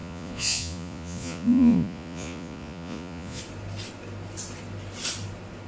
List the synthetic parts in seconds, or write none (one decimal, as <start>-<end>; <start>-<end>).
0.0-3.4